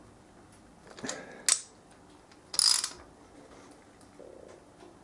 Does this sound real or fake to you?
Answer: real